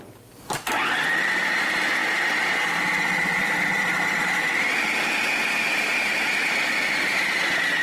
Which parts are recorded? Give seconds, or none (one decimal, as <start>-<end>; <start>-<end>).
0.0-7.8